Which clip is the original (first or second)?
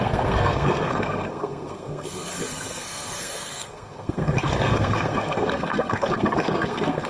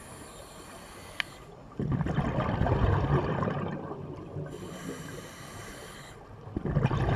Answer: second